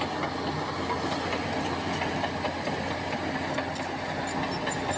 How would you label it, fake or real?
real